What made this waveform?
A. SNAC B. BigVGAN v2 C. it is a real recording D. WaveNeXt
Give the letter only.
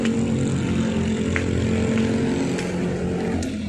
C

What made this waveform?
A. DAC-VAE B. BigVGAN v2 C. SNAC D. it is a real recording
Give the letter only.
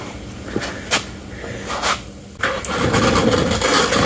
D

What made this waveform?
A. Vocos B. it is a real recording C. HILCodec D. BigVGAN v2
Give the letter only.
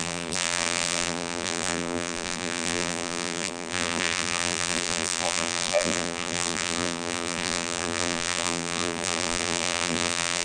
D